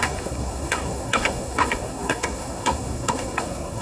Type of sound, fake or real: fake